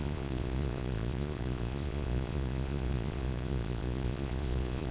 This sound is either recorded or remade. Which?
remade